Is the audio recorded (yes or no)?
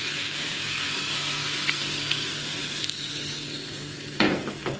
no